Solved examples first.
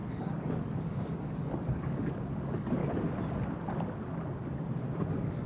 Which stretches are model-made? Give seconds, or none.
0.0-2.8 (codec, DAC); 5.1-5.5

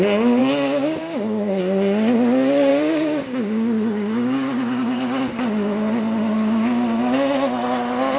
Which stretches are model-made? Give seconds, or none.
0.4-1.6 (codec, DAC); 2.7-5.2

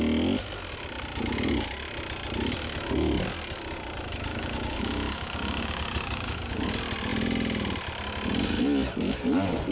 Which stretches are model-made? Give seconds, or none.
4.3-6.6 (codec, DAC)